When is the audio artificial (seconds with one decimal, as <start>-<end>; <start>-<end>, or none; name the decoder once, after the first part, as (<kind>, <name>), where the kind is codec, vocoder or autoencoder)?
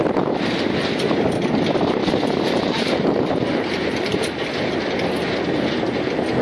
2.0-4.2 (vocoder, BigVGAN v2)